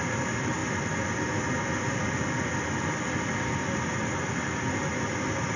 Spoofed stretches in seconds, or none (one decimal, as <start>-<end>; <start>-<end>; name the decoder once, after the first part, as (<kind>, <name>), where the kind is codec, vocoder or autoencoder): none